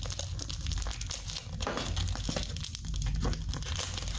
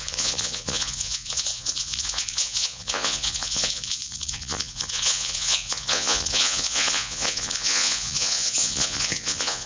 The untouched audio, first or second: first